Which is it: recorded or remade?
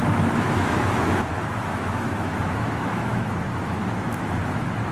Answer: remade